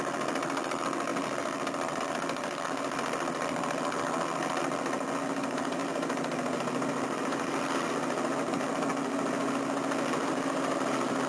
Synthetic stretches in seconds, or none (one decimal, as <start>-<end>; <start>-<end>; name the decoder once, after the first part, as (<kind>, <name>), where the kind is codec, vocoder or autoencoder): none